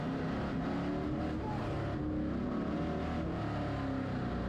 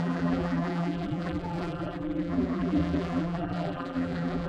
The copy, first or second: second